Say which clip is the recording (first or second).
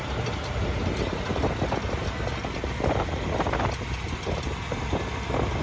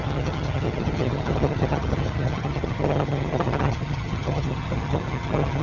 first